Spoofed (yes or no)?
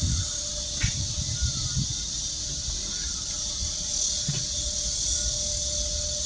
no